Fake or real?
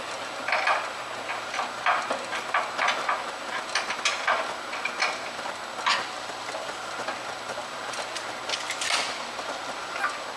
real